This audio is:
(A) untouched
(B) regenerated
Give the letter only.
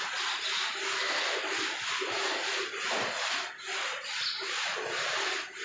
A